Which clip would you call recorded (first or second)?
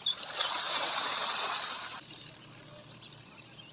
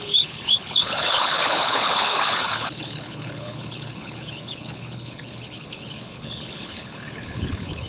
first